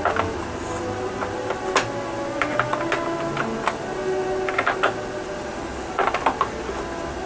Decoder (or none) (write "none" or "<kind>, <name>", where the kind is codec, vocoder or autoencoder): none